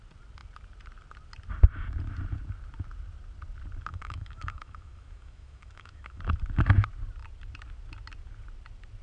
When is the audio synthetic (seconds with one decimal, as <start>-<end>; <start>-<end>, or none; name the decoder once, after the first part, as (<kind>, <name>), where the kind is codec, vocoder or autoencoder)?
3.9-6.2 (autoencoder, DAC-VAE)